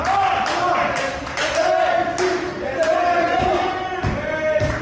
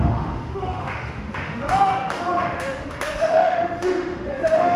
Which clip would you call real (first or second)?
first